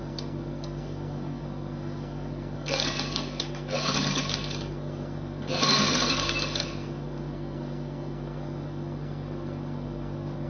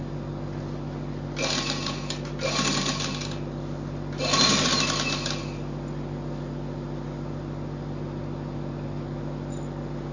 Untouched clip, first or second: second